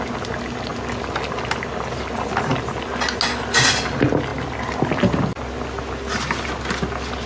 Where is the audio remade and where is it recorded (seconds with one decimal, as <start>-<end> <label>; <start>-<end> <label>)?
0.0-4.3 recorded; 4.3-4.9 remade; 4.9-7.3 recorded